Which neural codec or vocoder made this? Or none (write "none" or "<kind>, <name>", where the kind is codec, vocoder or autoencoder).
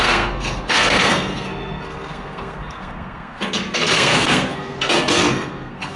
codec, SNAC